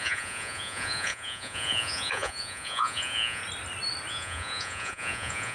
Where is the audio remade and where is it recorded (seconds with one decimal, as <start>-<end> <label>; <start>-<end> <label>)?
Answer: 0.0-3.4 remade; 3.4-4.1 recorded; 4.1-5.5 remade